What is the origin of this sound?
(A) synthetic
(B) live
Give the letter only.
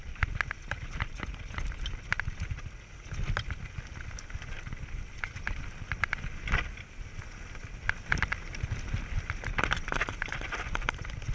B